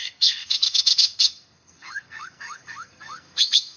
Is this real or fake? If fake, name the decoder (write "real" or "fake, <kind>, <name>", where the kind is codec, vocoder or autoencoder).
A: fake, codec, SNAC